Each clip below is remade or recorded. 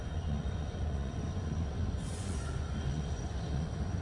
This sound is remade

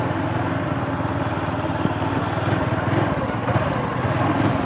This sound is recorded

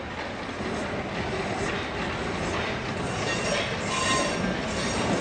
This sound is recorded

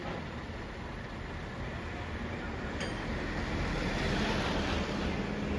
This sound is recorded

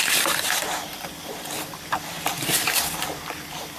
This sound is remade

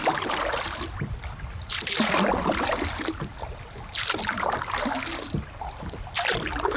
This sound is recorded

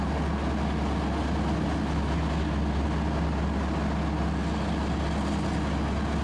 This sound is recorded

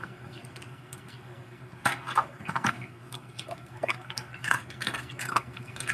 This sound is remade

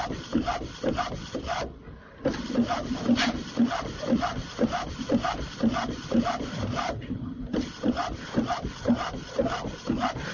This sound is recorded